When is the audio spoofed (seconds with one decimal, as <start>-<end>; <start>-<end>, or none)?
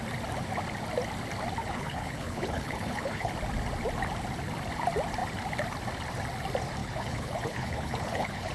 1.6-3.3; 6.8-8.5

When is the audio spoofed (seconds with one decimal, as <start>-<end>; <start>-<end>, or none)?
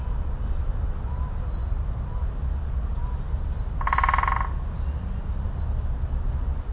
none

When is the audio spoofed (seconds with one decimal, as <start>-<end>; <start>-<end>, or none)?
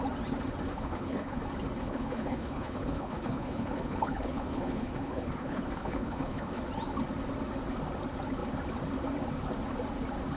0.7-1.4; 1.8-6.6